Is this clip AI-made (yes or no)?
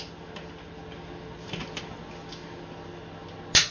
no